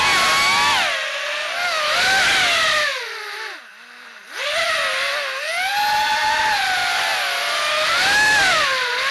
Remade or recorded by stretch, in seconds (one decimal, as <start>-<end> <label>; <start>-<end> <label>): 0.0-9.1 recorded